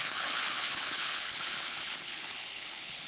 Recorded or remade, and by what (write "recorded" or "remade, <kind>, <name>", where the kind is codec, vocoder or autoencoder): remade, codec, HILCodec